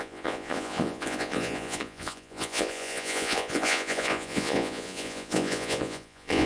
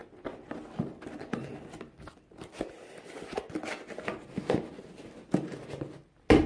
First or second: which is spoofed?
first